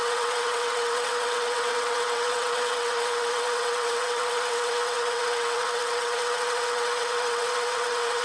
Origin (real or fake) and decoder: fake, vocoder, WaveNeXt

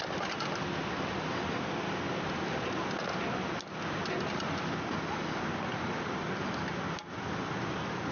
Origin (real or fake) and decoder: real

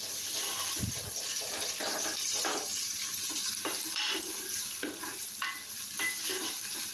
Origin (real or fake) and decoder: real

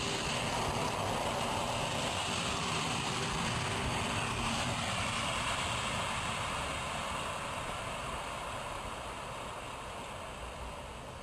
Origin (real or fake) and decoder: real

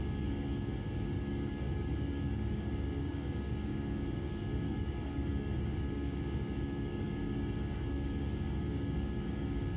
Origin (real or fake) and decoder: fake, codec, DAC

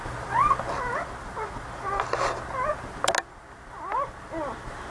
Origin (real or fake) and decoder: real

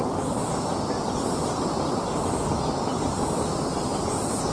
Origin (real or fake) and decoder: real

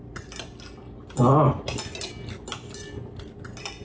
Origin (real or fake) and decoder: real